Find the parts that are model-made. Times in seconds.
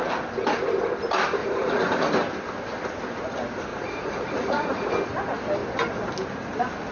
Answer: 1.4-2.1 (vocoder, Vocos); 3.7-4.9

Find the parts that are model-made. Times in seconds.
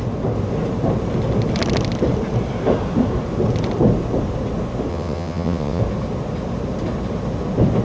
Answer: 4.9-5.8 (vocoder, WaveNeXt)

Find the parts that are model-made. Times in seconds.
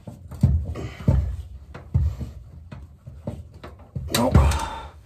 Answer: 4.4-5.1 (autoencoder, DAC-VAE)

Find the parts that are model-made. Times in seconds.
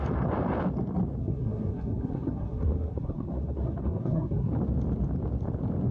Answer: 1.2-4.5 (codec, SNAC)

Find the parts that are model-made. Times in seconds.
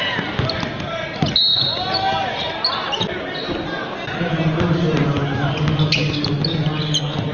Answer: none